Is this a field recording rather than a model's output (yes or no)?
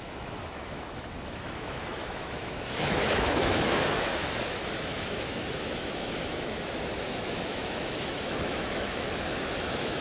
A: no